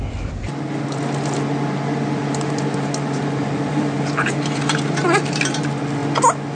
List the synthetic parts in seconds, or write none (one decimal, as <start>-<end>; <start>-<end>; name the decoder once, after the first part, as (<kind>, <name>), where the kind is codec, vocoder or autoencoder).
2.2-5.6 (vocoder, BigVGAN v2)